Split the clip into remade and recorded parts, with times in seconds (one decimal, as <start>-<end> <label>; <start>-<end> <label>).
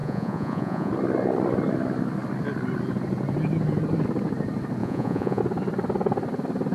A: 0.0-0.9 remade; 0.9-4.8 recorded; 4.8-5.4 remade; 5.4-6.7 recorded